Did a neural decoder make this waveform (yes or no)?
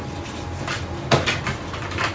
no